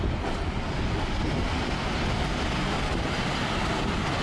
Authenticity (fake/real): real